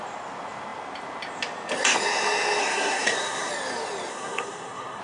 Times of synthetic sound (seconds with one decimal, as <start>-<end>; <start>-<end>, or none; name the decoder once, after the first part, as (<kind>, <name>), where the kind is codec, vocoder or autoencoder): 2.6-3.5 (codec, SNAC); 4.1-5.0